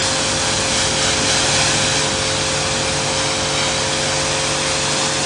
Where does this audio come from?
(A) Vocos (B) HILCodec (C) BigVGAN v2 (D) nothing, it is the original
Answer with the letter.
D